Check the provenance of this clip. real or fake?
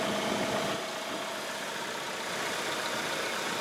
real